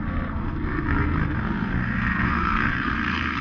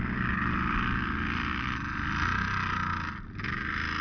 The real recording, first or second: second